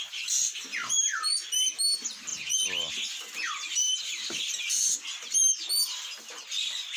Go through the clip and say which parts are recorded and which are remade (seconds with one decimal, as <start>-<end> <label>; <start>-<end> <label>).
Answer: 0.0-7.0 recorded